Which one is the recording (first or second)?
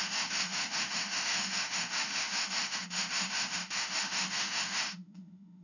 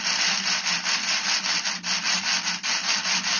second